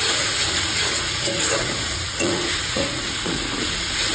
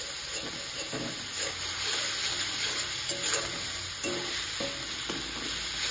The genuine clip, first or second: second